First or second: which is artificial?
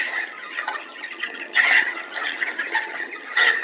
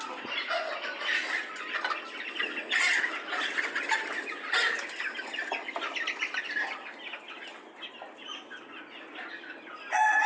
first